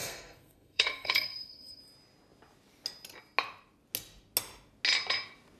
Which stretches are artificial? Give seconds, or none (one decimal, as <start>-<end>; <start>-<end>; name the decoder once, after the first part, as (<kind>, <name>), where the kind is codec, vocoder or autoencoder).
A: 0.0-1.8 (codec, SNAC)